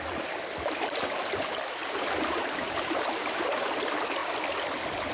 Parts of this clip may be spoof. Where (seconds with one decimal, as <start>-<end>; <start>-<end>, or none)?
1.8-2.9